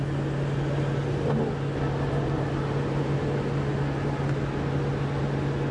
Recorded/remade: recorded